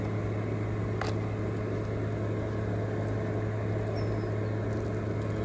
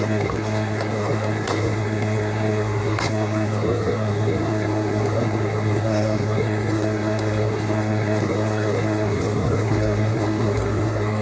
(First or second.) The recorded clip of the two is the first